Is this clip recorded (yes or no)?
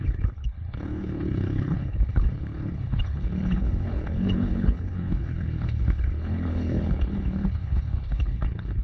no